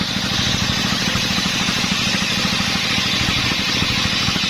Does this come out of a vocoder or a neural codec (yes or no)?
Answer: no